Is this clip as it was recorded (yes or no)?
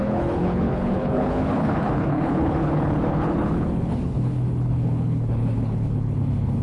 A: no